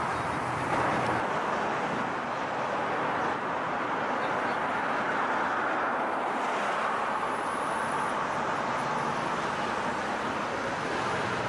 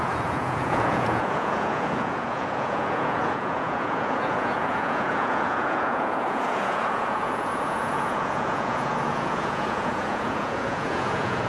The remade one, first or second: second